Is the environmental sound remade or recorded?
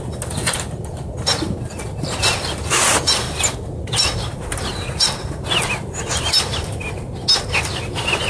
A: recorded